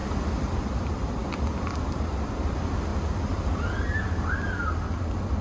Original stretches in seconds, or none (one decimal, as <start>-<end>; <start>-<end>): 0.7-2.9; 5.0-5.4